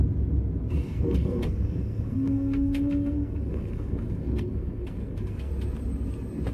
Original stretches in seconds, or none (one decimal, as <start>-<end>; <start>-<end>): 0.0-0.7; 5.5-6.5